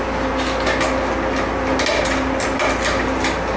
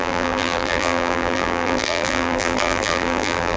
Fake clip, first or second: second